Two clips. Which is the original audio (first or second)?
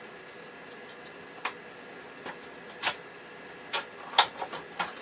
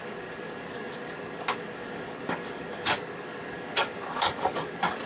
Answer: first